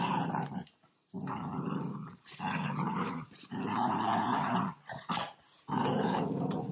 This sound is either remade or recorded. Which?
remade